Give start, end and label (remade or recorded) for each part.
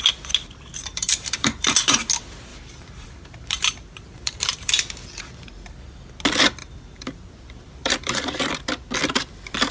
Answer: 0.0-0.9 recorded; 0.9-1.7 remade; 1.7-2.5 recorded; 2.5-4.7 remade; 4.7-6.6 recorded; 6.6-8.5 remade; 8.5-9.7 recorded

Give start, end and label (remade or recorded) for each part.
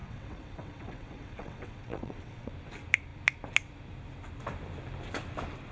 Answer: 0.0-2.5 remade; 2.5-5.7 recorded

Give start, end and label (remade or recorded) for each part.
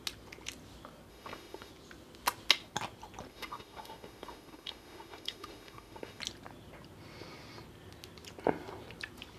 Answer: 0.0-1.1 recorded; 1.1-1.7 remade; 1.7-3.3 recorded; 3.3-6.2 remade; 6.2-9.4 recorded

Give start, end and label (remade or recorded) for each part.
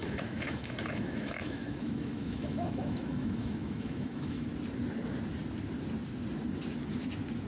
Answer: 0.0-4.5 remade; 4.5-7.5 recorded